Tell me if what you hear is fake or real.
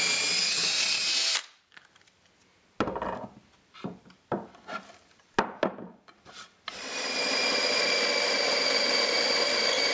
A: real